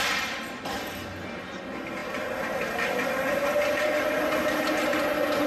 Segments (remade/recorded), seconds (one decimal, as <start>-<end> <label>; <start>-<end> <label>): 0.0-5.5 recorded